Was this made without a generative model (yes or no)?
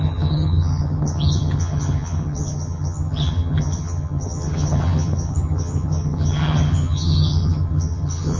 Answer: no